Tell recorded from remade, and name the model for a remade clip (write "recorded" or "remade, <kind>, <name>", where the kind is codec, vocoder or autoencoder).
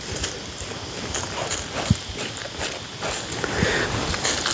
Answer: recorded